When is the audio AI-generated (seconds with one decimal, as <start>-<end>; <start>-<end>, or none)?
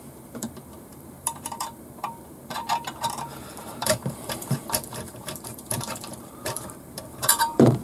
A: 0.0-7.8